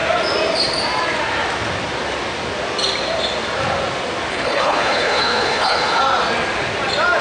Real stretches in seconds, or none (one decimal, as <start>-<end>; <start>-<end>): 0.0-4.3; 6.0-7.2